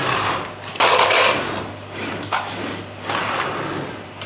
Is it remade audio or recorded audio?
recorded